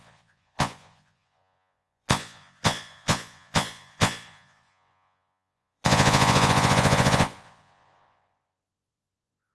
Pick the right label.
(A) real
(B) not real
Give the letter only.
B